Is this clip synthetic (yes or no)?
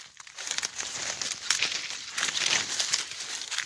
no